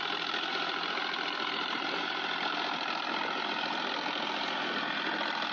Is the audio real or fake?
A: real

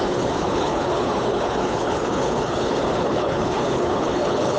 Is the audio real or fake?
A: fake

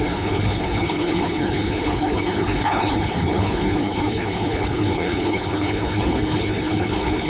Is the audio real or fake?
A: fake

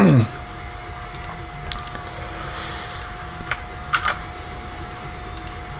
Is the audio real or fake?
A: real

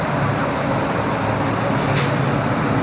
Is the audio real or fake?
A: real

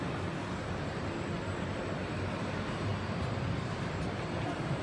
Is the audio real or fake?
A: real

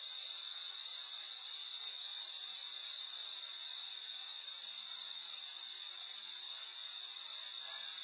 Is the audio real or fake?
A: real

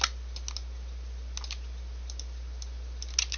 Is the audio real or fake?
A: real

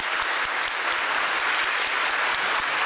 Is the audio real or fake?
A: real